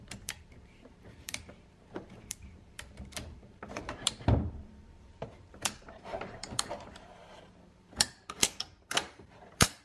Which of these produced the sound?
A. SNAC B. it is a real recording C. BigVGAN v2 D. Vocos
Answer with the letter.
C